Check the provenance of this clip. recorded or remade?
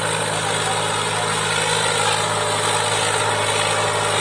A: recorded